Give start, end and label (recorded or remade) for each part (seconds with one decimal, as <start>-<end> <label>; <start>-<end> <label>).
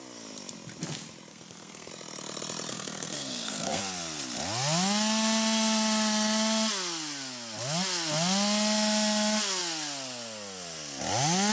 0.0-1.3 recorded; 1.3-1.9 remade; 1.9-2.7 recorded; 2.7-3.8 remade; 3.8-11.5 recorded